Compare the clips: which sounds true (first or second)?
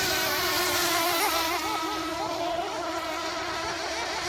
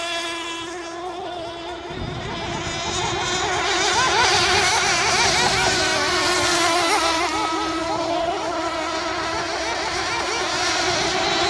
second